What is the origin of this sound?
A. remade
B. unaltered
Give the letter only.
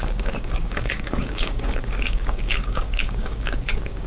A